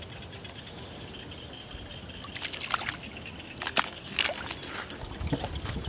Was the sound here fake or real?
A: real